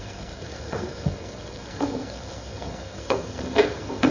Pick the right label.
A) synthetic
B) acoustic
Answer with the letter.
A